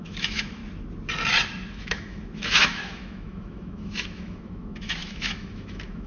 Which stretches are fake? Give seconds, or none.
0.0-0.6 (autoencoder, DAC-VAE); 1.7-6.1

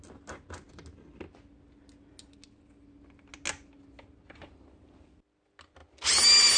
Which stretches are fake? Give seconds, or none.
none

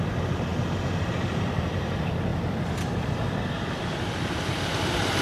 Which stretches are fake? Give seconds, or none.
0.0-0.5 (vocoder, BigVGAN v2); 1.1-5.2

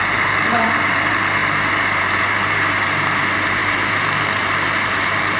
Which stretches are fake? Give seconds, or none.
0.0-1.4 (vocoder, BigVGAN v2); 2.0-5.4

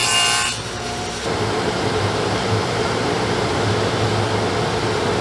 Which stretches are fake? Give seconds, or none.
0.0-3.0 (vocoder, BigVGAN v2)

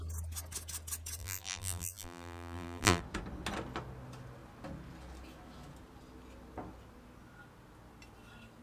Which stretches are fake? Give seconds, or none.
1.2-3.0 (vocoder, BigVGAN v2)

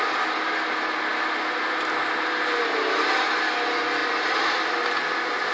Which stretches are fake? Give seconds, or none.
none

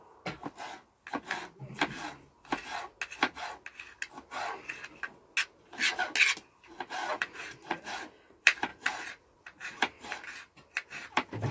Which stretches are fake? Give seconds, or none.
7.0-7.8 (vocoder, Vocos); 8.7-9.7